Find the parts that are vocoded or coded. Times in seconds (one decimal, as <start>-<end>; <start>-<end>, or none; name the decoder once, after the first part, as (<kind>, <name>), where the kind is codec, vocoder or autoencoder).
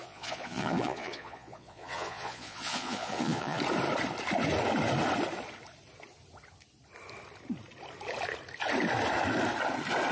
0.0-3.6 (vocoder, Vocos)